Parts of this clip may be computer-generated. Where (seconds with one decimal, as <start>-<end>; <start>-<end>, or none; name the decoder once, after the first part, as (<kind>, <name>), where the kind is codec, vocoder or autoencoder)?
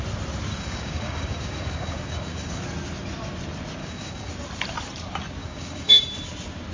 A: 0.5-2.6 (codec, DAC); 3.8-4.3; 5.4-6.0